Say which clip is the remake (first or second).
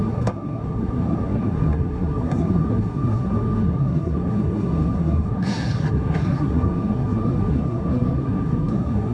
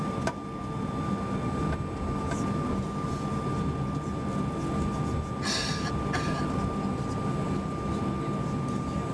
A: first